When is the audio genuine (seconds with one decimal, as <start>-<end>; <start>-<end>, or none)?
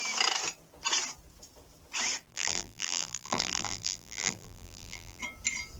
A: 0.0-2.3; 5.2-5.8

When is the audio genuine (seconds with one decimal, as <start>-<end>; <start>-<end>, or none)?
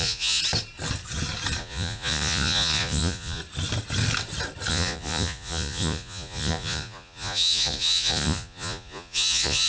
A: 0.4-1.6; 3.4-4.7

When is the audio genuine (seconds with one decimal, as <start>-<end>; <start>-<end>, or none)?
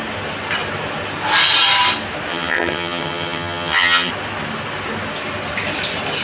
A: 0.0-2.3; 4.1-6.2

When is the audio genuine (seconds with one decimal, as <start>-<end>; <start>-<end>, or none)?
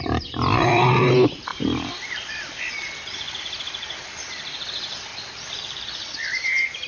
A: 1.5-3.4; 5.1-6.9